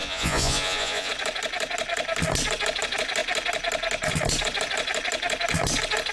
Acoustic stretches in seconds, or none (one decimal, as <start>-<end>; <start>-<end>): 1.1-6.1